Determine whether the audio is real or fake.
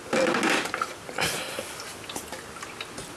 real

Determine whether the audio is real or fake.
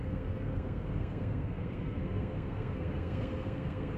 fake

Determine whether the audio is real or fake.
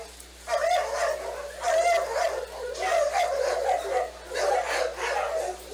real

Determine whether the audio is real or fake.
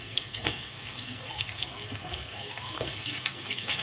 fake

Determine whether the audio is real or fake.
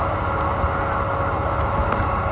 real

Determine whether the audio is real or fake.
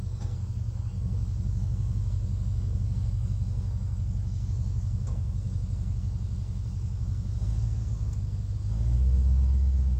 fake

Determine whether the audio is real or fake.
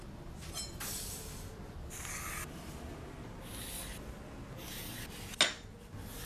real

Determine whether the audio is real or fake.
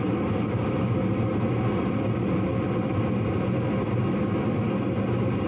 real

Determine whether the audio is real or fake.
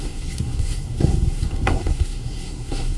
fake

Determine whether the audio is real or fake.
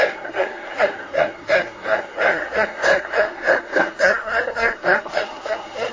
fake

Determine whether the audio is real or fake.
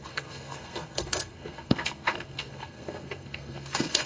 fake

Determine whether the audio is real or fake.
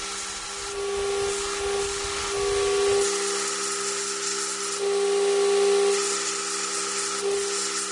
real